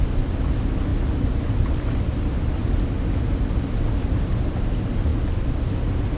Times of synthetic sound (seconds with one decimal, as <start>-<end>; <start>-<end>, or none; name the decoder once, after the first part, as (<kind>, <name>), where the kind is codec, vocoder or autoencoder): none